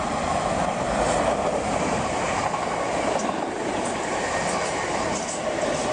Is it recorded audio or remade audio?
recorded